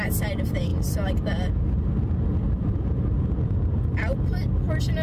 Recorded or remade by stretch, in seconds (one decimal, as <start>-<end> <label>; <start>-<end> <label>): 0.0-5.0 recorded